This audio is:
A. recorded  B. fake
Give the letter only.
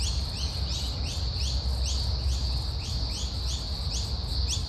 A